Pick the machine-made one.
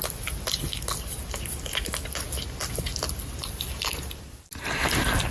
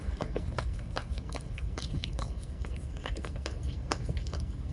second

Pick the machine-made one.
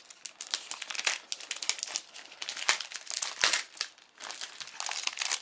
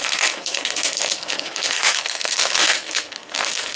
second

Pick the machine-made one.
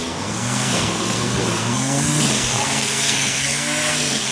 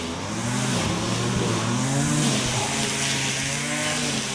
first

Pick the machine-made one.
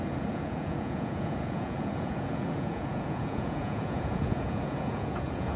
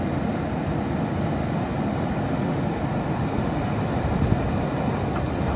first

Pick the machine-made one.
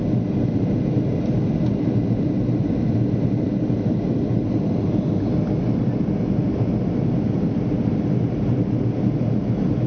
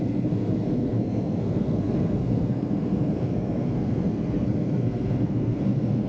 second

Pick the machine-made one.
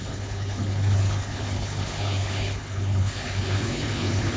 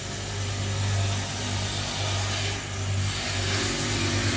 first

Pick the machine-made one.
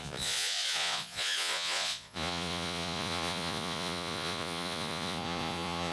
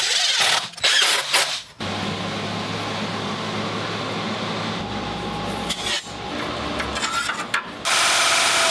first